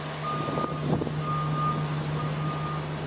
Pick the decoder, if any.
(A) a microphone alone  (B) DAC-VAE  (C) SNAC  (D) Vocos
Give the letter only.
A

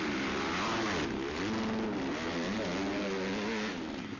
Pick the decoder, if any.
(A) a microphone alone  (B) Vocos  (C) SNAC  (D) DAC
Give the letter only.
A